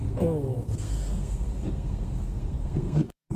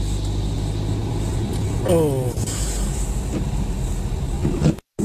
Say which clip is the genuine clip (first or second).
second